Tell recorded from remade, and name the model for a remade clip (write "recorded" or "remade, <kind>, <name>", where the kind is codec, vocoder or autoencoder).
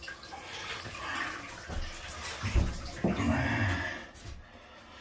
recorded